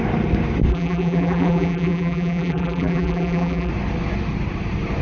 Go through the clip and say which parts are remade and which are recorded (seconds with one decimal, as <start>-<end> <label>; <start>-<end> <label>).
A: 0.0-0.7 recorded; 0.7-3.7 remade; 3.7-5.0 recorded